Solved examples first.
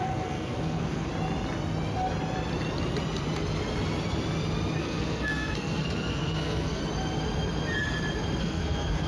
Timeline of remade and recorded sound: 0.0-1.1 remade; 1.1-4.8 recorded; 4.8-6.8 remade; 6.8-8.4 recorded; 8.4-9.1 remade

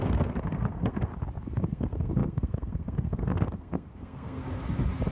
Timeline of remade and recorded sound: 0.0-1.1 remade; 1.1-1.6 recorded; 1.6-4.4 remade; 4.4-5.1 recorded

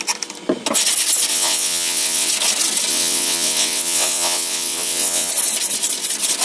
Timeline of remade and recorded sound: 0.0-1.3 recorded; 1.3-2.3 remade; 2.3-2.9 recorded; 2.9-5.3 remade; 5.3-6.4 recorded